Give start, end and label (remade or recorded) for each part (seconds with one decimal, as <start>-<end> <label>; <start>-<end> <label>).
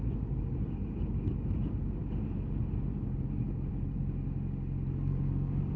0.0-5.8 recorded